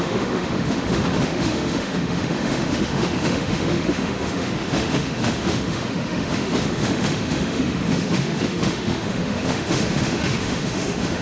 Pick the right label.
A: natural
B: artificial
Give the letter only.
B